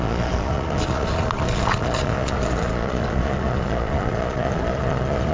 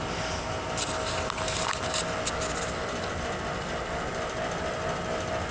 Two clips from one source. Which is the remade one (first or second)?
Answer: first